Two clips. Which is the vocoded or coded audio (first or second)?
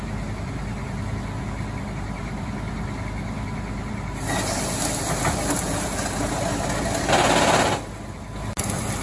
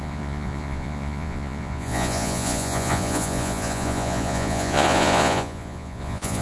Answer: second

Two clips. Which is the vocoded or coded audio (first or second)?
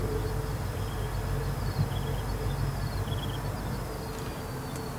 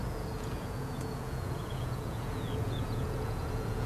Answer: second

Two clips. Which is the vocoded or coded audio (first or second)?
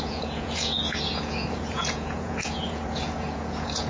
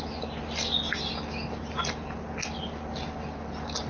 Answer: first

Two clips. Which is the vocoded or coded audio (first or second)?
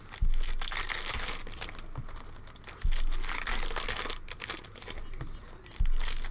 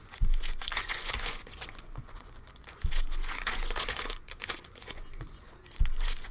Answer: second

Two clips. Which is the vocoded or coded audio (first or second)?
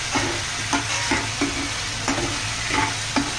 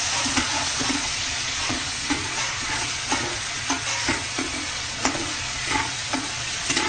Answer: second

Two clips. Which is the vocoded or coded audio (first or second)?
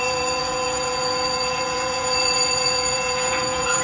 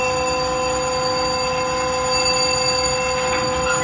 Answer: first